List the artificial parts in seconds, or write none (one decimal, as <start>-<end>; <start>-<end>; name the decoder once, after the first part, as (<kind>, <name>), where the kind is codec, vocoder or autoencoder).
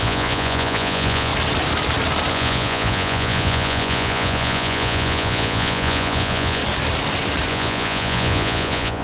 0.0-1.3 (vocoder, Vocos); 2.3-6.6; 7.5-9.0